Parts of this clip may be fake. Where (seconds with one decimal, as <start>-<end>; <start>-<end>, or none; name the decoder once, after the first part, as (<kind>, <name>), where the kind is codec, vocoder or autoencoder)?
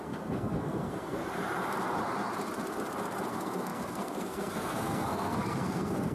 0.0-1.2 (codec, SNAC); 3.3-6.1